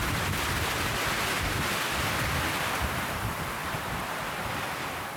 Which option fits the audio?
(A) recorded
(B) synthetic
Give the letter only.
A